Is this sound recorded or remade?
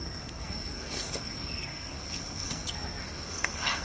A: remade